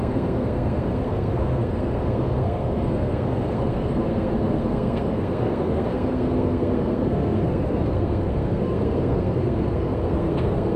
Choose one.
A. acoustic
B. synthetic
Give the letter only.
B